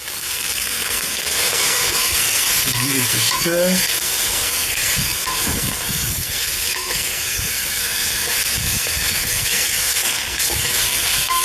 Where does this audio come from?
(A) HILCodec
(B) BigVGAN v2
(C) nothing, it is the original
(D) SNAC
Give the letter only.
D